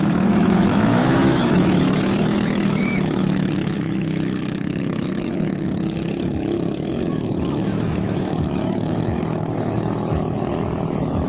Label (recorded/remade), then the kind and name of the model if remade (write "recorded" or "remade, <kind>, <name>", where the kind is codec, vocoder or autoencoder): remade, autoencoder, DAC-VAE